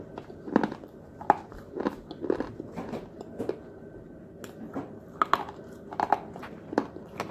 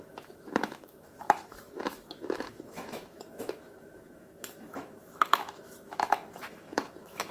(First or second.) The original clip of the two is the first